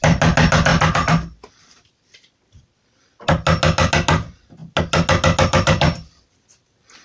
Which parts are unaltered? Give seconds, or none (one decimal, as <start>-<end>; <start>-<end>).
0.0-7.0